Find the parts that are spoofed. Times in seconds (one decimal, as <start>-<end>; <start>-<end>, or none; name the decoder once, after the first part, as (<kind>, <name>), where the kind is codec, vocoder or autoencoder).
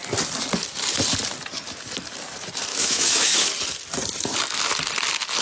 2.7-3.5 (autoencoder, DAC-VAE)